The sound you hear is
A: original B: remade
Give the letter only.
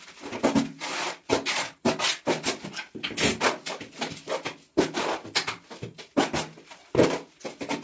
A